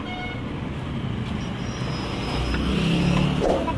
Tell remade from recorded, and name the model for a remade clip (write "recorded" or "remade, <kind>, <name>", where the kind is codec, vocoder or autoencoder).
recorded